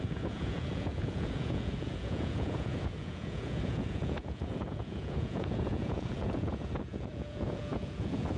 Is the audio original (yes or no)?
no